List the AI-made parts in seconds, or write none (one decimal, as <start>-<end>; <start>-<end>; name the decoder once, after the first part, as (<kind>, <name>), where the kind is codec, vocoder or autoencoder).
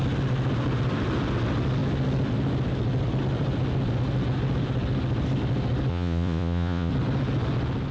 5.9-6.9 (vocoder, Vocos)